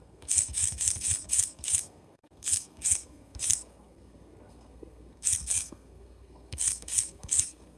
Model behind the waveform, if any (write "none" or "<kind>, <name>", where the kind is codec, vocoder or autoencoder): codec, SNAC